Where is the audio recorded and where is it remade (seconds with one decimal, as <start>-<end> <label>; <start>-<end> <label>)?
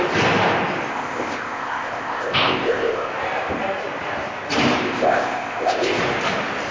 0.0-0.9 recorded; 0.9-3.1 remade; 3.1-4.8 recorded; 4.8-6.0 remade; 6.0-6.7 recorded